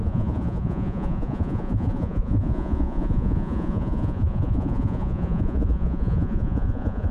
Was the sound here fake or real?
fake